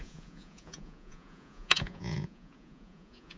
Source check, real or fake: fake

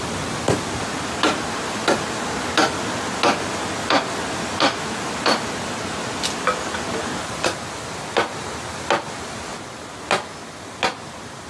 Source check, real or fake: real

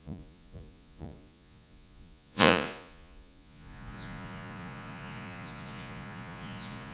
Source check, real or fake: fake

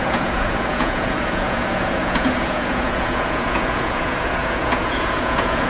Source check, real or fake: fake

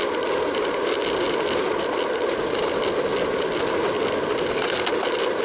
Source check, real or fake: real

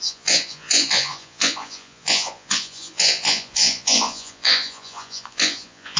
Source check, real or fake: fake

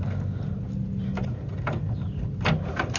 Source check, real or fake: real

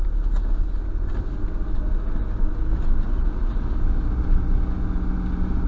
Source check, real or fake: real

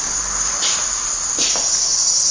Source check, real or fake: real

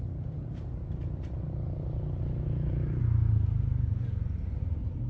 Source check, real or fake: real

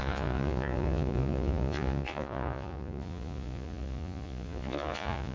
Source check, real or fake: fake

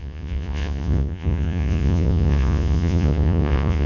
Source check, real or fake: fake